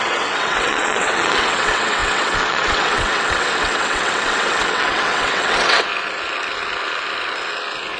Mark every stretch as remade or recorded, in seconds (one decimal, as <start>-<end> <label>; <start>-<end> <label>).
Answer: 0.0-5.9 remade; 5.9-8.0 recorded